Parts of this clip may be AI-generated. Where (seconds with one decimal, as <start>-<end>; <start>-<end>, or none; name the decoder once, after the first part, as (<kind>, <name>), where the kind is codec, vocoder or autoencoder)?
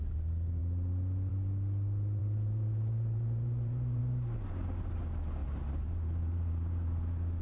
2.2-4.0 (vocoder, BigVGAN v2); 5.4-7.4